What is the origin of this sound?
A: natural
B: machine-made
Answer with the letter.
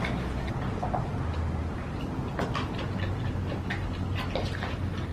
A